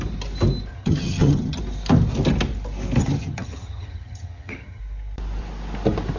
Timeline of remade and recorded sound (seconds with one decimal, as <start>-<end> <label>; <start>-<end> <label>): 0.0-0.7 recorded; 0.7-1.6 remade; 1.6-3.0 recorded; 3.0-4.8 remade; 4.8-6.2 recorded